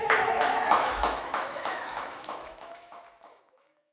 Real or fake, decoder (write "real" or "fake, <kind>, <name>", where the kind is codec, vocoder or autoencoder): fake, autoencoder, DAC-VAE